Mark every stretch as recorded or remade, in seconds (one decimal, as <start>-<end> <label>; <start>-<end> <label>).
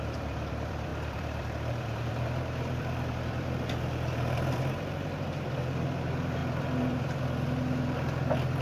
0.0-8.6 remade